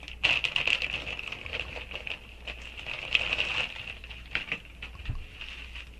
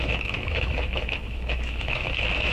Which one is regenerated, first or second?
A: second